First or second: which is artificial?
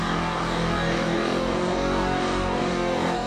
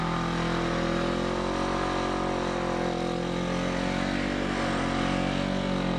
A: first